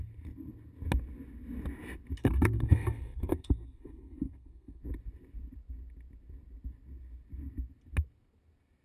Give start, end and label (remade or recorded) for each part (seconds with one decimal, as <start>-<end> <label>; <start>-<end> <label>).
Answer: 0.0-2.2 recorded; 2.2-4.8 remade; 4.8-8.8 recorded